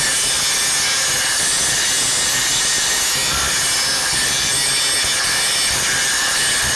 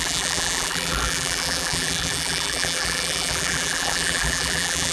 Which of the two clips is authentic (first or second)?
first